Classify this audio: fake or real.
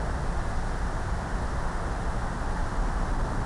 real